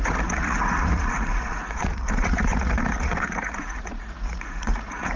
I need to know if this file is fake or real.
fake